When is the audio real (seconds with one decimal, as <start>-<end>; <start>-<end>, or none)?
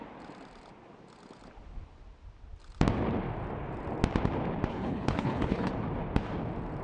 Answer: 0.0-4.7; 5.7-6.8